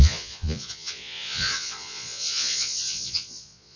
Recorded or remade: remade